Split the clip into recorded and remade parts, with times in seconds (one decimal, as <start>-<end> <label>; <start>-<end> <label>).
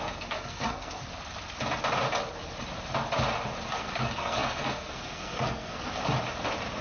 0.0-1.0 remade; 1.0-3.7 recorded; 3.7-6.0 remade; 6.0-6.8 recorded